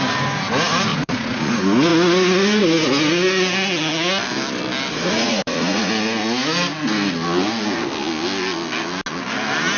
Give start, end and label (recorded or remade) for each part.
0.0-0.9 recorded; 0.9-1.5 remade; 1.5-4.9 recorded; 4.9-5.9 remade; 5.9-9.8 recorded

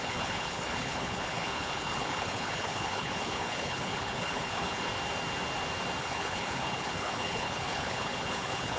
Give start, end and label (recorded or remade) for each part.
0.0-4.9 remade; 4.9-6.0 recorded; 6.0-8.8 remade

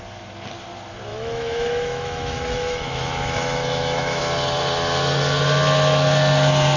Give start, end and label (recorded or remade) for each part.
0.0-1.1 recorded; 1.1-4.2 remade; 4.2-6.8 recorded